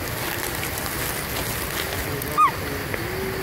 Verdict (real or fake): real